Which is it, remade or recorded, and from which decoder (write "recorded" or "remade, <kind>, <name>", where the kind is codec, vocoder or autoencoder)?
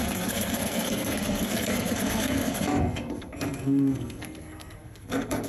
remade, codec, SNAC